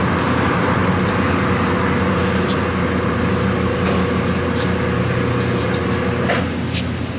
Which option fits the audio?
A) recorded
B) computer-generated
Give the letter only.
A